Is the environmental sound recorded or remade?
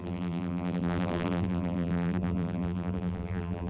remade